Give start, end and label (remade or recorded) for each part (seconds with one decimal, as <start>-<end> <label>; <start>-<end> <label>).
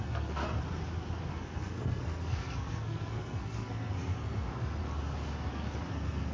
0.0-0.4 remade; 0.4-1.3 recorded; 1.3-4.8 remade; 4.8-5.5 recorded; 5.5-6.3 remade